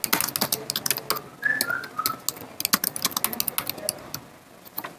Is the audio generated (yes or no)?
no